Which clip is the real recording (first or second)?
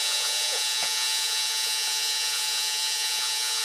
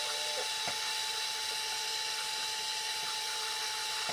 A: second